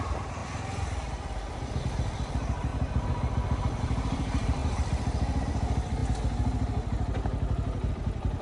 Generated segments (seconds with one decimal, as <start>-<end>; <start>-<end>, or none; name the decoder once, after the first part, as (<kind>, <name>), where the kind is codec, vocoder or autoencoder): 0.0-2.7 (vocoder, BigVGAN v2); 3.8-4.6; 5.4-6.0; 7.9-8.4